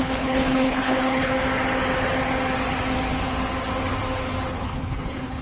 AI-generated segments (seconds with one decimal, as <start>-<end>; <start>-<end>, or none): 0.0-1.3; 4.5-5.4

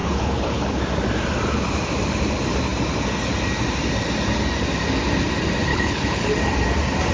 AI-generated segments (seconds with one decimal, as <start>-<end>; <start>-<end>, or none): 0.0-0.8; 5.7-6.3

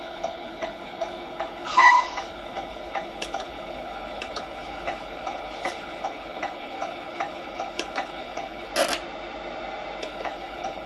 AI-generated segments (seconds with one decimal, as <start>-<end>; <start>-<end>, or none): 0.0-8.7; 10.0-10.9

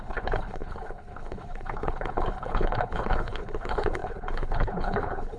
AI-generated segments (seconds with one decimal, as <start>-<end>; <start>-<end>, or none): 0.0-5.4